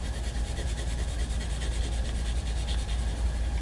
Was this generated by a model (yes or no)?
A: no